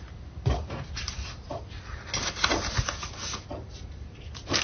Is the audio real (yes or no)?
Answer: yes